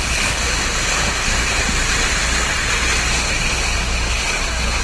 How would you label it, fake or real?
real